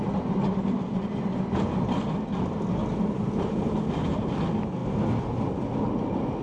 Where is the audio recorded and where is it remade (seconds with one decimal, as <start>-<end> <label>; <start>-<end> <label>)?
0.0-6.4 recorded

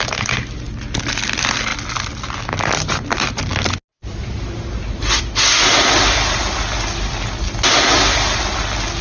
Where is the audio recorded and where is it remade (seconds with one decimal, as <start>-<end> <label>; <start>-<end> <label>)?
0.0-9.0 recorded

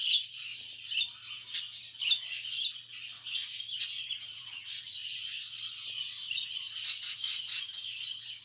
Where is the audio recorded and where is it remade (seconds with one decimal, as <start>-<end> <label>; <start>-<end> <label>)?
0.0-0.5 remade; 0.5-3.8 recorded; 3.8-8.4 remade

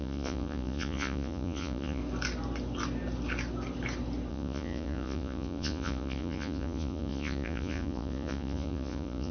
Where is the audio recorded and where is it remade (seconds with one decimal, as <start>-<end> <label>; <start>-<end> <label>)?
0.0-2.0 remade; 2.0-4.3 recorded; 4.3-9.3 remade

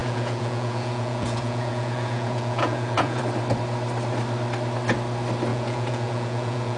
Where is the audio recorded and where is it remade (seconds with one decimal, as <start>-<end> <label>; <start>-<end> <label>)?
0.0-3.2 remade; 3.2-5.5 recorded; 5.5-6.8 remade

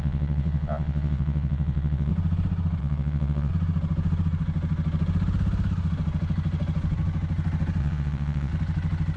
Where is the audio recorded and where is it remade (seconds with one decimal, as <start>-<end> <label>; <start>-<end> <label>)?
0.0-2.1 remade; 2.1-2.8 recorded; 2.8-3.5 remade; 3.5-7.8 recorded; 7.8-8.5 remade; 8.5-9.2 recorded

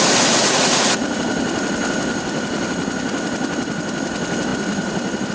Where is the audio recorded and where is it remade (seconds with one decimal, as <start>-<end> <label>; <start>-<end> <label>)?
0.0-0.4 recorded; 0.4-1.2 remade; 1.2-5.3 recorded